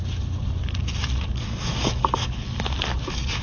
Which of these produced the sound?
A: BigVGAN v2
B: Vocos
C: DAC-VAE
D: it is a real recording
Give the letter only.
D